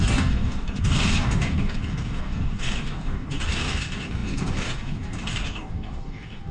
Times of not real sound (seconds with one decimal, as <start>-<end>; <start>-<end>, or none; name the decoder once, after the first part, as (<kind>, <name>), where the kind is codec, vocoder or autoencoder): 0.0-6.5 (codec, DAC)

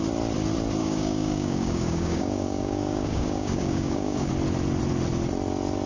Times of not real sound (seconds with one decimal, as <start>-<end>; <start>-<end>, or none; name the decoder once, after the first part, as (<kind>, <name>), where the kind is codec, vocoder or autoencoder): 0.8-4.3 (codec, DAC)